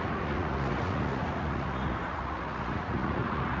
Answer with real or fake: fake